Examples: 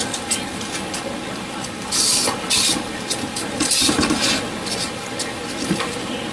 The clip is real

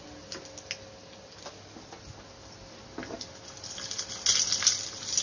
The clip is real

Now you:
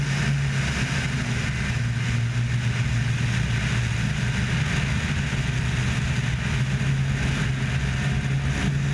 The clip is real